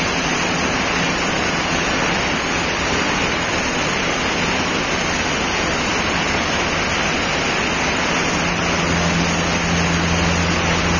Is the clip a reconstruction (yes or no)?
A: no